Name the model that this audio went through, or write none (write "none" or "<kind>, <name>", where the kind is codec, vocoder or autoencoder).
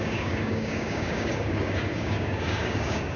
codec, DAC